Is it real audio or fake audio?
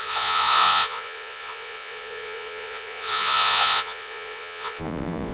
fake